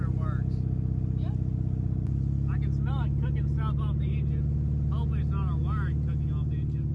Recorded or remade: recorded